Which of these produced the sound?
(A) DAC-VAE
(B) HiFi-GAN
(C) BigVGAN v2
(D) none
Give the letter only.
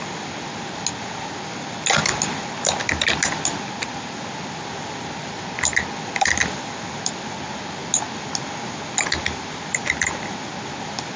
D